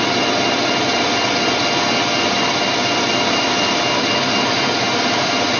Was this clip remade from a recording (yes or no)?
no